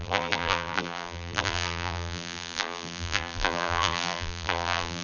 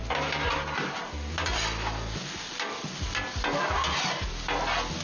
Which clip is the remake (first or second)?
first